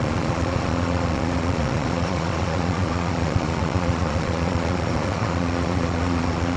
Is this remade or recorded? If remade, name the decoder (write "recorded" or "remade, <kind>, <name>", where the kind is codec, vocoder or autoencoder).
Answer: remade, vocoder, Vocos